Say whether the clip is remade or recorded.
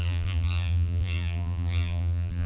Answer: remade